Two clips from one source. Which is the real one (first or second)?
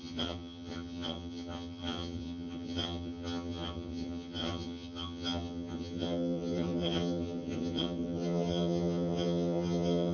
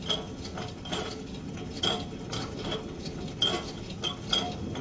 second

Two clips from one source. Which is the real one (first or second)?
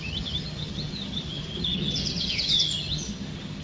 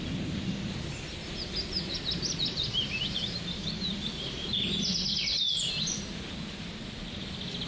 second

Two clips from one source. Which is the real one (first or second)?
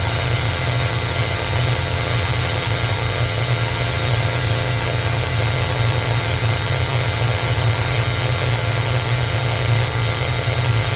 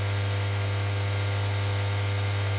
second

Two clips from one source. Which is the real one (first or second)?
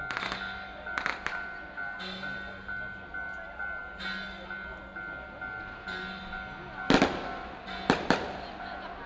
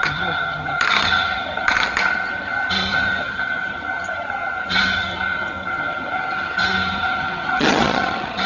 first